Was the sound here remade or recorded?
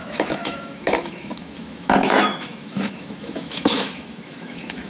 remade